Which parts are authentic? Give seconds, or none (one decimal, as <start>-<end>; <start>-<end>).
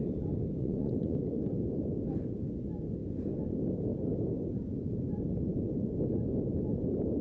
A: 0.0-0.6; 1.2-7.2